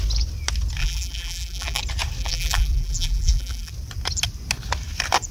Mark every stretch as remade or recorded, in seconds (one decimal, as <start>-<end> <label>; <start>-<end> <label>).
0.0-0.8 recorded; 0.8-1.8 remade; 1.8-2.2 recorded; 2.2-3.7 remade; 3.7-5.3 recorded